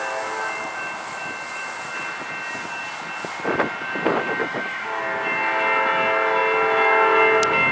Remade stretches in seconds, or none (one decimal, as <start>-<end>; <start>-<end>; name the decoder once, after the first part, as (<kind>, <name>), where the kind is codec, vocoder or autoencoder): 4.4-5.0 (autoencoder, DAC-VAE)